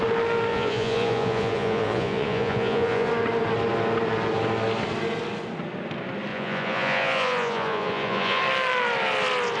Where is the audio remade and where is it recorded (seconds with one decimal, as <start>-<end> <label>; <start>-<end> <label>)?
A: 0.0-0.5 recorded; 0.5-3.1 remade; 3.1-6.3 recorded; 6.3-8.4 remade; 8.4-9.6 recorded